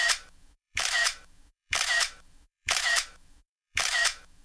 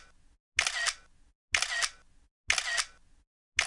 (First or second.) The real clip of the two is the second